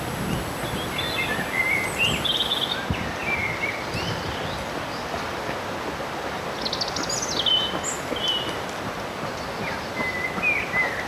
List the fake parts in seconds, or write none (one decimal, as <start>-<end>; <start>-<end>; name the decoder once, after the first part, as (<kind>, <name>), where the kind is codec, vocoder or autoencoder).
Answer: none